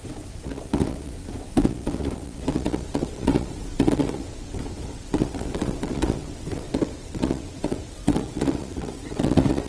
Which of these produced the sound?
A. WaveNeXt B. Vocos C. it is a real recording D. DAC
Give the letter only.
A